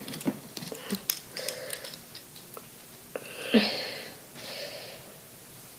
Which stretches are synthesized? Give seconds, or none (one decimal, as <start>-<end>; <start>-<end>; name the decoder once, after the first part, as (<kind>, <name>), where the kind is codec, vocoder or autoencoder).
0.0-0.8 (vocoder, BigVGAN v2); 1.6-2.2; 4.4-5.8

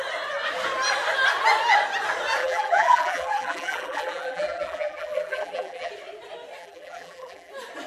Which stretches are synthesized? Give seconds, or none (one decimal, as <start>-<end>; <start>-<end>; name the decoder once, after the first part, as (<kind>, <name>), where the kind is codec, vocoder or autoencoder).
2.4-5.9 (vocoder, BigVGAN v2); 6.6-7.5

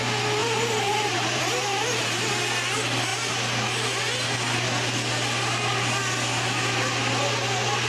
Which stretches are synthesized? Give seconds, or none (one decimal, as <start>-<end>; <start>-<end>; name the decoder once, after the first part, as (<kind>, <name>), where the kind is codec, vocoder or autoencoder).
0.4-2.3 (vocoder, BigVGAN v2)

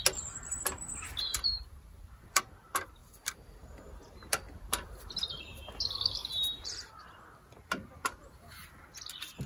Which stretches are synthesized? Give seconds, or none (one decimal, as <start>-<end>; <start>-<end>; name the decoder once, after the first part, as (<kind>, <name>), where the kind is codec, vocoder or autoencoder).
1.3-2.4 (vocoder, BigVGAN v2); 3.0-5.2; 6.2-6.9; 8.2-8.7

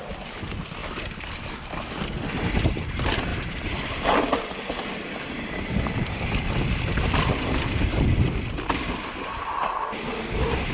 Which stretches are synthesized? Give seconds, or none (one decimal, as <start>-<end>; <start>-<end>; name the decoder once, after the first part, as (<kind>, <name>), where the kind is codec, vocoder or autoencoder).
0.0-0.8 (vocoder, BigVGAN v2); 1.5-10.7